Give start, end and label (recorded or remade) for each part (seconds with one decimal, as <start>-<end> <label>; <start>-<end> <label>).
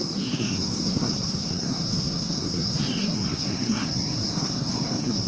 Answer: 0.0-5.3 remade